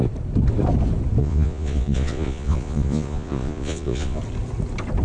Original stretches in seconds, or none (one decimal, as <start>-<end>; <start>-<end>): 0.0-1.2; 4.2-5.0